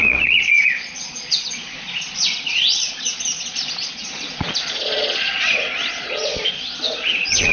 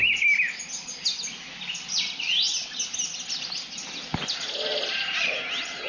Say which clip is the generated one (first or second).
first